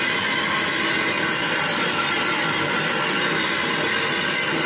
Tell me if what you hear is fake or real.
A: real